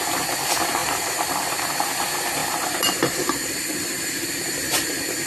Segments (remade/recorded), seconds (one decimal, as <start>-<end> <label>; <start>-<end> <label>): 0.0-5.3 remade